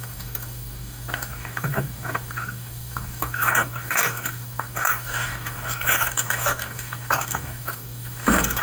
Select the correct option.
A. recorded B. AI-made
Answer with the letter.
B